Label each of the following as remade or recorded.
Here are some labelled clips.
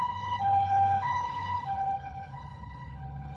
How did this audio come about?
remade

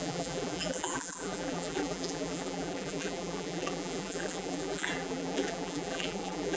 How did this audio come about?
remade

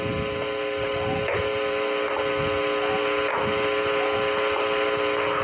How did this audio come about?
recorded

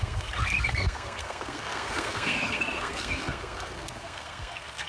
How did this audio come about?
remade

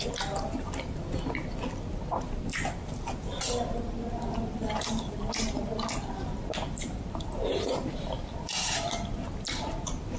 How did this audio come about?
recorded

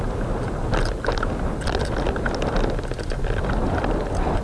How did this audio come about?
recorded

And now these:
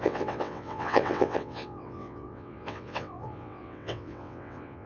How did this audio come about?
remade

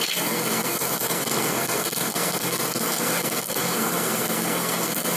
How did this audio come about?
remade